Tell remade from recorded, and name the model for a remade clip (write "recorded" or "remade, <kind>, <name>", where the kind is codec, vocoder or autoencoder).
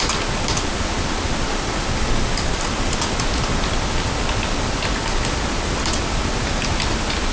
recorded